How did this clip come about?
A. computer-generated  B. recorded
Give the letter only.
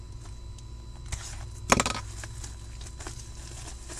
B